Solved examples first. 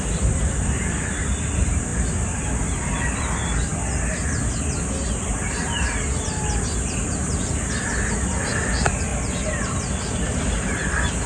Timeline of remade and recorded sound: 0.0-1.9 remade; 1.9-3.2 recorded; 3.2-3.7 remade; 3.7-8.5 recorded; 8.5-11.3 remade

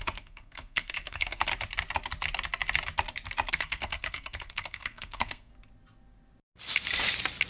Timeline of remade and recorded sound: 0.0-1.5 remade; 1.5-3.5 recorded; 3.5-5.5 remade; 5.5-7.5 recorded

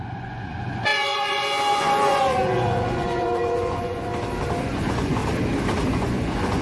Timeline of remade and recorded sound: 0.0-4.1 remade; 4.1-4.6 recorded; 4.6-5.2 remade; 5.2-5.9 recorded; 5.9-6.6 remade

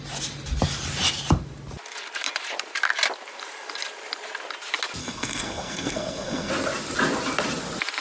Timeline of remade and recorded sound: 0.0-5.0 recorded; 5.0-6.5 remade; 6.5-8.0 recorded

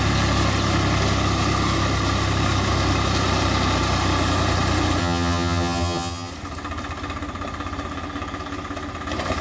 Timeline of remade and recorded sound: 0.0-5.0 recorded; 5.0-6.3 remade; 6.3-9.4 recorded

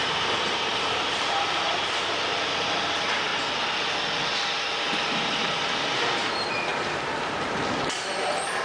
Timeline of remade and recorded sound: 0.0-3.3 remade; 3.3-4.7 recorded; 4.7-6.7 remade; 6.7-8.2 recorded; 8.2-8.6 remade

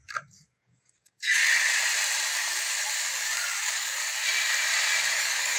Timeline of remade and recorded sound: 0.0-1.4 remade; 1.4-3.1 recorded; 3.1-4.0 remade; 4.0-5.1 recorded; 5.1-5.6 remade